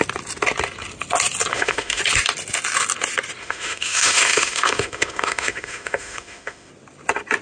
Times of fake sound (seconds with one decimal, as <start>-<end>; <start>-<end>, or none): 1.5-2.0; 3.4-6.7